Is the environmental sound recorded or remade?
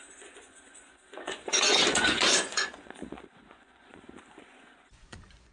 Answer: remade